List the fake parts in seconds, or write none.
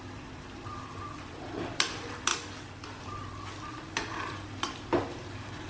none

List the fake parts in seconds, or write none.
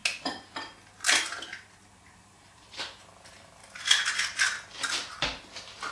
2.2-3.6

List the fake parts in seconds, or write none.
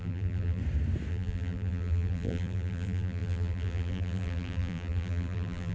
0.0-0.6; 1.1-5.7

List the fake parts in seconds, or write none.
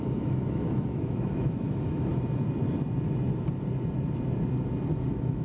0.0-2.1; 4.9-5.4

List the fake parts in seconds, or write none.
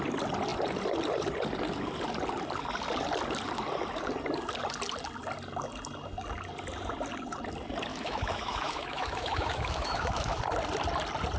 7.9-10.4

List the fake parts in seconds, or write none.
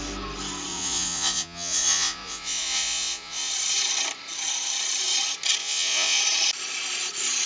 0.7-3.5; 5.6-6.2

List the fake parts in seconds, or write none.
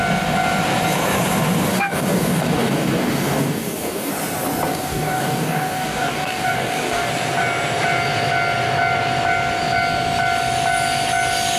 1.7-4.1; 4.7-7.1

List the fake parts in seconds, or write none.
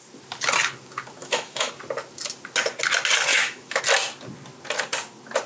1.2-1.7; 3.3-3.8